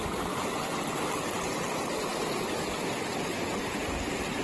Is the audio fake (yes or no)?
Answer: no